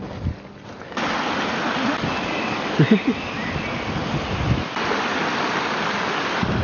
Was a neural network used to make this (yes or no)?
no